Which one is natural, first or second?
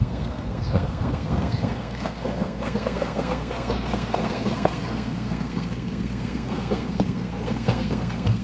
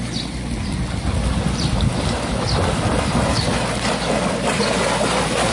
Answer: second